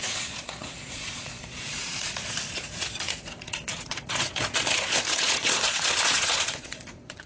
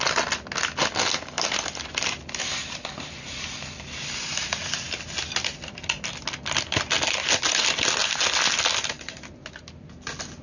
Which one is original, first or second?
second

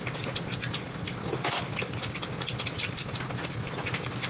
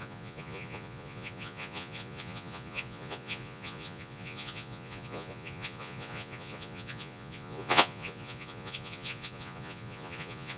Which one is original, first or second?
first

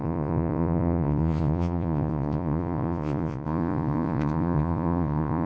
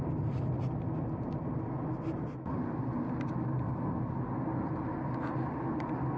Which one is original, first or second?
second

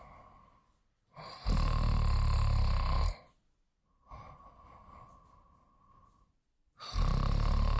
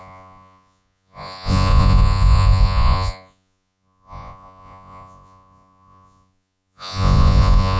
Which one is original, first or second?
first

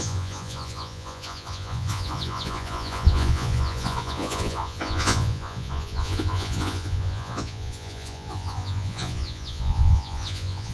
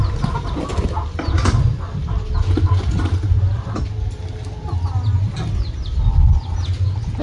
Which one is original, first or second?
second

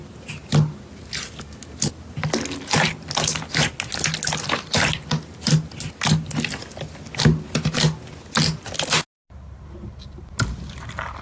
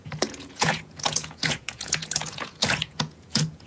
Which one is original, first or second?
first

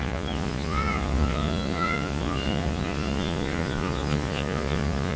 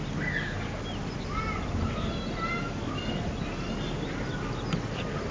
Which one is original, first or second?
second